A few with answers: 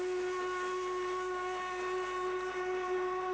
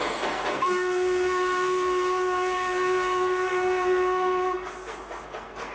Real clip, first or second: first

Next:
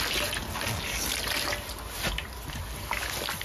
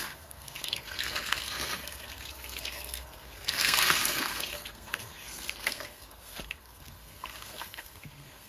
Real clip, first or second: first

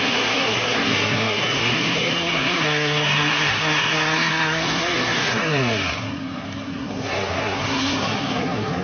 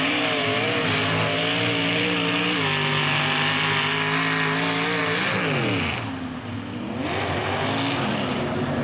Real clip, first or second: second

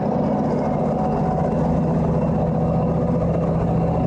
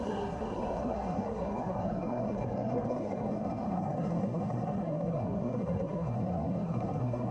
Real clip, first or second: first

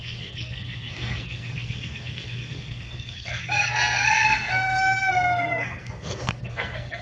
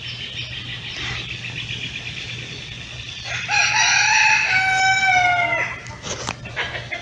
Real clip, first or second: second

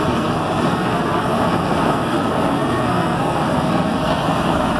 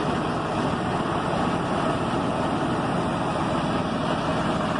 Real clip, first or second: second